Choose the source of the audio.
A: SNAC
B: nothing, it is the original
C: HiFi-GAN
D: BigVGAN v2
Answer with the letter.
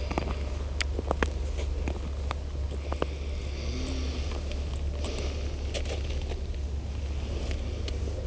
B